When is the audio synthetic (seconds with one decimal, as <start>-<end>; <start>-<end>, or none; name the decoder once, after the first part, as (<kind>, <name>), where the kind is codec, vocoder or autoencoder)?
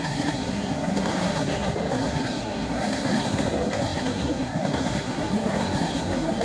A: 0.0-6.4 (codec, SNAC)